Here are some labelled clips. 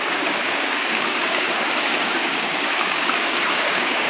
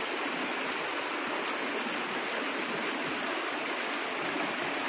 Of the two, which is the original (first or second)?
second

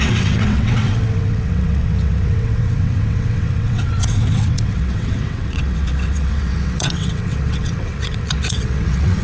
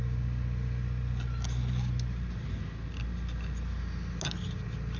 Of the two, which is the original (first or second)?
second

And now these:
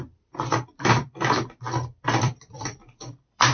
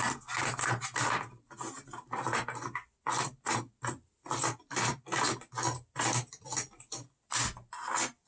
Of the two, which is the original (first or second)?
second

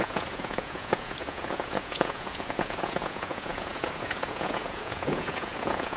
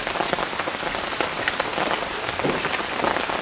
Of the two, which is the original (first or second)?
second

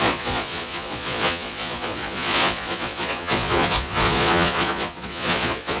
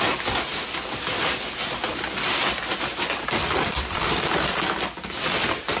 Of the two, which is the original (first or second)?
second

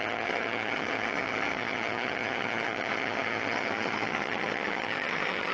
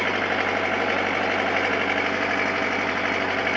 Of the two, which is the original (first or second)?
second